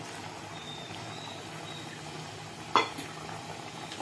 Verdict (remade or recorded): recorded